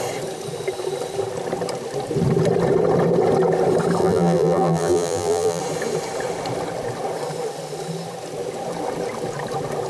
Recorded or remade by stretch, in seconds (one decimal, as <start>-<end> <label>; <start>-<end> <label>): 0.0-4.0 recorded; 4.0-5.6 remade; 5.6-9.9 recorded